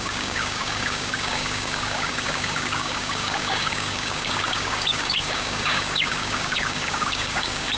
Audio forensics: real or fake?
fake